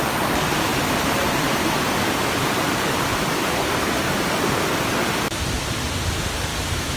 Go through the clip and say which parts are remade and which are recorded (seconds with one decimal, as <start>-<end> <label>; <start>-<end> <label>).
0.0-6.5 recorded; 6.5-7.0 remade